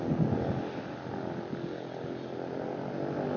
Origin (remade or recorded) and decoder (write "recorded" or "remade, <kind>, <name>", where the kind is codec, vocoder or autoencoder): recorded